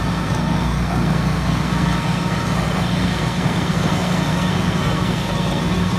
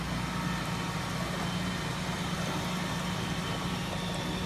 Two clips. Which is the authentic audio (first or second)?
second